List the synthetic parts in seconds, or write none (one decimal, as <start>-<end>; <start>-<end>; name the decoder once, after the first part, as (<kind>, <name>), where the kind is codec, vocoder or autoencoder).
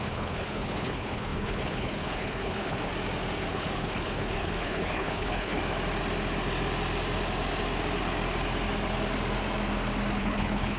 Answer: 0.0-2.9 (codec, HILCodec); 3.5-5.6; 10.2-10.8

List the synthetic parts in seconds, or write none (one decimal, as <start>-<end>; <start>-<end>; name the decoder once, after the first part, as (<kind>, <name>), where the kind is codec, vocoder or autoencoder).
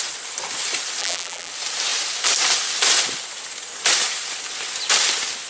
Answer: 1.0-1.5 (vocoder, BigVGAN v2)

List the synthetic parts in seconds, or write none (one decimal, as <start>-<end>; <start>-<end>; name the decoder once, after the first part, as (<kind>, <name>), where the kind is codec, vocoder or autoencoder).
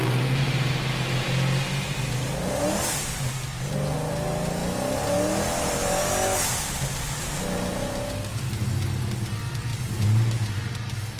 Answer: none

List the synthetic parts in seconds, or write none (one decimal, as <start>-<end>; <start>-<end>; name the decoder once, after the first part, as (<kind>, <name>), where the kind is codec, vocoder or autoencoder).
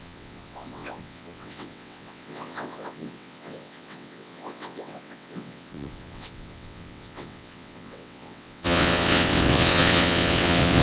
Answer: 0.0-10.8 (vocoder, WaveNeXt)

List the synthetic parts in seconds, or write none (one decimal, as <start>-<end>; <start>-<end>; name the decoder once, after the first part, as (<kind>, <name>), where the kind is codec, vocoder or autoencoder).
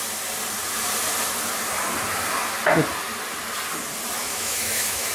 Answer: 4.2-5.1 (autoencoder, DAC-VAE)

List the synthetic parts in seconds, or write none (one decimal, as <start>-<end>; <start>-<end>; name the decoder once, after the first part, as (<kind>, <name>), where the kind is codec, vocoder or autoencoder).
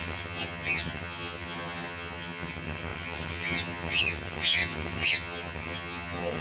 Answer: 0.0-6.4 (vocoder, HiFi-GAN)